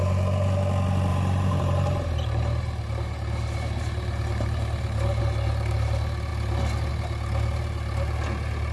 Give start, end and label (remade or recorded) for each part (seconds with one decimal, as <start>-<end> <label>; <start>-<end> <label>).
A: 0.0-1.1 recorded; 1.1-5.2 remade; 5.2-8.7 recorded